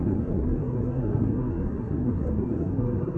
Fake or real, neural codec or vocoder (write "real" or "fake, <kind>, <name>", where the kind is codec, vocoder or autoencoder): fake, codec, SNAC